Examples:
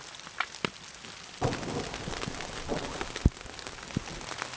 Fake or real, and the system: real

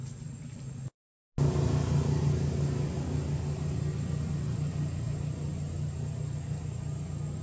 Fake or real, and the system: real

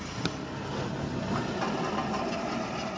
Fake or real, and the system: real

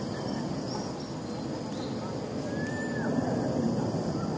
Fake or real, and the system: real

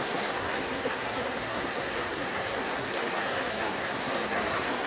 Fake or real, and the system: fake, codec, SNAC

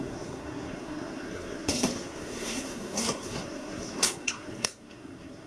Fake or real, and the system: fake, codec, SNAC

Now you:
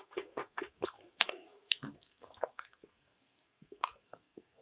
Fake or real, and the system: fake, codec, SNAC